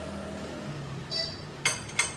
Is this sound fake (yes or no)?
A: no